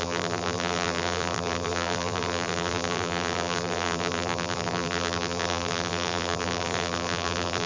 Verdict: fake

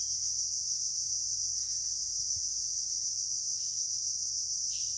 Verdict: real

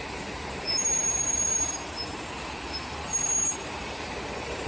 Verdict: fake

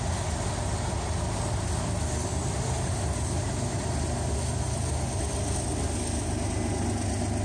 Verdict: real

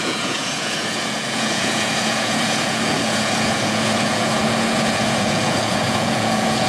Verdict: fake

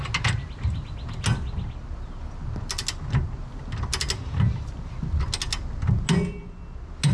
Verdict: real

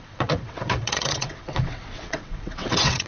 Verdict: fake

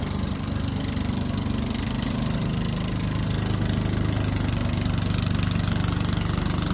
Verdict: real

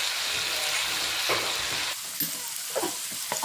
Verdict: real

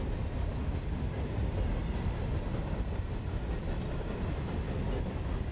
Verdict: real